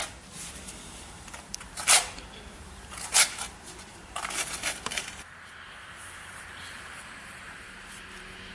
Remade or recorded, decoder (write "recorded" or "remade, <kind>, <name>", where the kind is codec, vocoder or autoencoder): remade, vocoder, BigVGAN v2